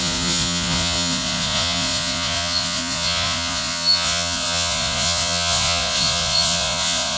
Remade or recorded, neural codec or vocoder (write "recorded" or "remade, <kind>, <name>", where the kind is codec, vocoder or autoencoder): remade, vocoder, Vocos